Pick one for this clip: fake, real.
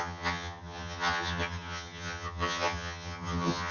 fake